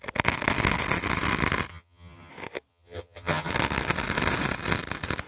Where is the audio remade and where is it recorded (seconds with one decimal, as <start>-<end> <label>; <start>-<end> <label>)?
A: 0.0-1.7 recorded; 1.7-2.3 remade; 2.3-2.7 recorded; 2.7-3.5 remade; 3.5-5.3 recorded